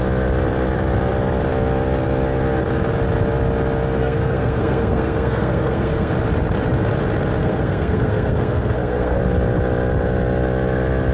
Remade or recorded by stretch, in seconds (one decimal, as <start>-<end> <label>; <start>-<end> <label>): 0.0-4.0 recorded; 4.0-6.1 remade; 6.1-7.4 recorded; 7.4-9.2 remade; 9.2-11.1 recorded